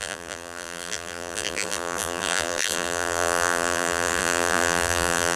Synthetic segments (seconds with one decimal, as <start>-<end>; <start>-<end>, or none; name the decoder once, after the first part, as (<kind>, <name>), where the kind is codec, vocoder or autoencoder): 0.0-5.4 (vocoder, BigVGAN v2)